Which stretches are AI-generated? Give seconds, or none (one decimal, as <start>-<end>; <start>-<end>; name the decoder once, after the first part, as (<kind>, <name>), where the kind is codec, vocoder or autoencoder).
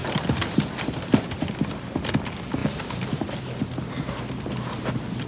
0.0-1.4 (vocoder, BigVGAN v2); 2.6-3.9